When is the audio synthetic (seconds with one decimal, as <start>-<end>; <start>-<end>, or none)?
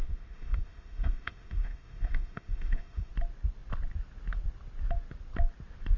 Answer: 0.0-3.1